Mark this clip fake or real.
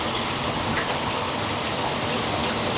real